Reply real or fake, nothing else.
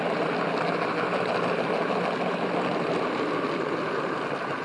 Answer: real